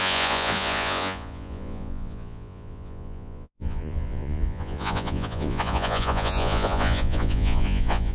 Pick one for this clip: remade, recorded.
remade